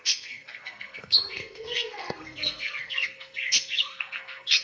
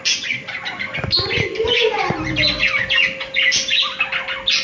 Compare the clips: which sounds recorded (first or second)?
second